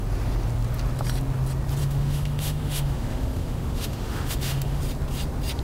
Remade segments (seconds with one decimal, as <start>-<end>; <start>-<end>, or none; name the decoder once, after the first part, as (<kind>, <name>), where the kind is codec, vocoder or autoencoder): 1.8-4.8 (autoencoder, DAC-VAE)